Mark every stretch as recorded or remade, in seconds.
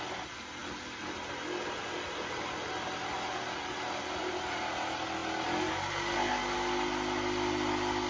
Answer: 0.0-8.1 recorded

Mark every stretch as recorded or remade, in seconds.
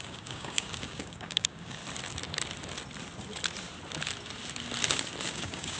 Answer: 0.0-1.8 remade; 1.8-5.3 recorded; 5.3-5.8 remade